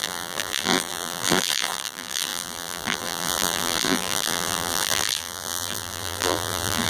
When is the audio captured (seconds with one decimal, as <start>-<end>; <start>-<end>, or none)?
none